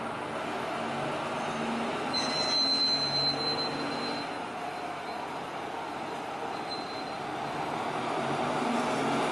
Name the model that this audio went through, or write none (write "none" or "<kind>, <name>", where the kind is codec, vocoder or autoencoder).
none